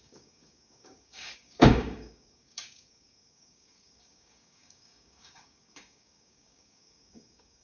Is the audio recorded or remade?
remade